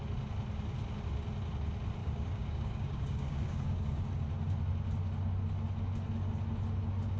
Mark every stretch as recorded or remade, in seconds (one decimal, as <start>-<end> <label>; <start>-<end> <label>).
0.0-2.0 recorded; 2.0-4.1 remade; 4.1-7.2 recorded